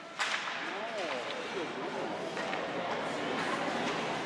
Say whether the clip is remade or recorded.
recorded